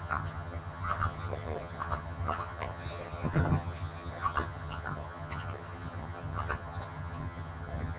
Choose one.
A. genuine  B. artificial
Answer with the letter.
B